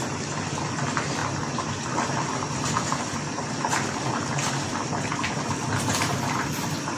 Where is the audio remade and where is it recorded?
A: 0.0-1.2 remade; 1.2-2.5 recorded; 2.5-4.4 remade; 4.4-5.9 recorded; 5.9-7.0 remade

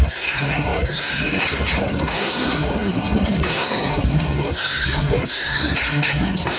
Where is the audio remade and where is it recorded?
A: 0.0-6.6 remade

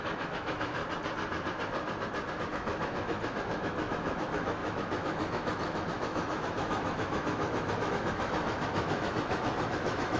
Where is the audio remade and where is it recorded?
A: 0.0-0.8 remade; 0.8-2.3 recorded; 2.3-10.2 remade

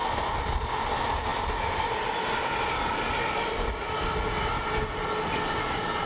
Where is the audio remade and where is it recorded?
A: 0.0-6.1 recorded